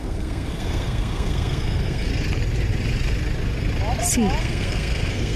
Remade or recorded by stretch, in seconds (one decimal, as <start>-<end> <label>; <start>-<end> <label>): 0.0-2.1 remade; 2.1-4.4 recorded; 4.4-5.4 remade

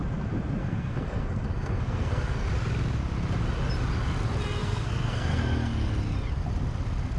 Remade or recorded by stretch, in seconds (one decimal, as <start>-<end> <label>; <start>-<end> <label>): 0.0-0.6 recorded; 0.6-2.5 remade; 2.5-4.6 recorded; 4.6-5.9 remade; 5.9-7.2 recorded

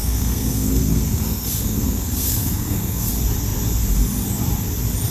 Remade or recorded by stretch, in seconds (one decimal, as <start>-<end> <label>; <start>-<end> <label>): 0.0-3.1 remade; 3.1-5.1 recorded

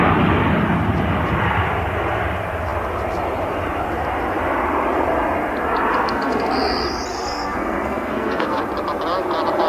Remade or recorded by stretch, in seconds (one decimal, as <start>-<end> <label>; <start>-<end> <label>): 0.0-5.9 recorded; 5.9-6.5 remade; 6.5-7.1 recorded; 7.1-8.6 remade; 8.6-9.7 recorded

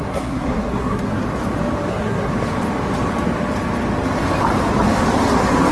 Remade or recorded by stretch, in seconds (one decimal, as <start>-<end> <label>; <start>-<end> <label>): 0.0-1.2 remade; 1.2-1.9 recorded; 1.9-2.3 remade; 2.3-5.7 recorded

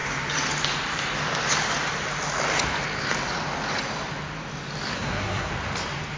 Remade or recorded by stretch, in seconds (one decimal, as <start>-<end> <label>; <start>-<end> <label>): 0.0-4.9 recorded; 4.9-5.5 remade; 5.5-6.2 recorded